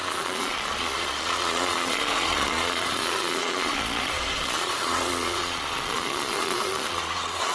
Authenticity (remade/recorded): remade